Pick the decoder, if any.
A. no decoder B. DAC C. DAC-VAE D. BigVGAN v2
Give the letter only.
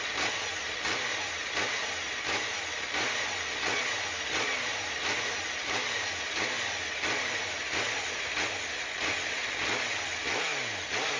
A